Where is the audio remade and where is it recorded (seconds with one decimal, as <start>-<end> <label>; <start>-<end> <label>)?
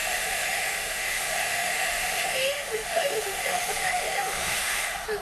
0.0-5.2 remade